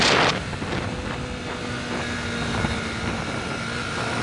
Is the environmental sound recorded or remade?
recorded